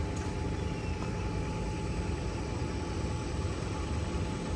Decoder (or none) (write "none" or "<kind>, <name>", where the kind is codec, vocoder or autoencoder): none